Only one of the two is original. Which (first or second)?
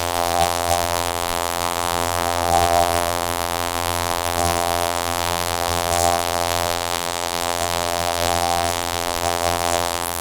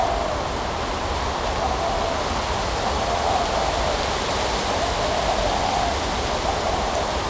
second